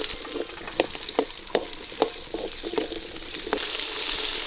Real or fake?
real